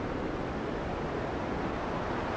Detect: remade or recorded recorded